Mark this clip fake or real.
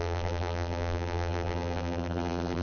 fake